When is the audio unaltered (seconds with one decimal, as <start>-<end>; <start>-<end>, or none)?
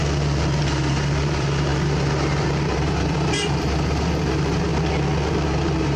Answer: 0.0-0.6; 4.7-5.3